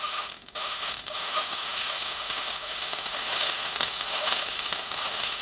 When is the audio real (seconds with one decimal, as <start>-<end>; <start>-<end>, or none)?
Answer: none